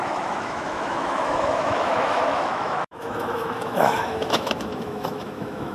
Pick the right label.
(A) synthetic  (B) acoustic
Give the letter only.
A